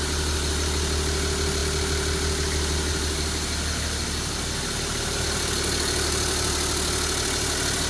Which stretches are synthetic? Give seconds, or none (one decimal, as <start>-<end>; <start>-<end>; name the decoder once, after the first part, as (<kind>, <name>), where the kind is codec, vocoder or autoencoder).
none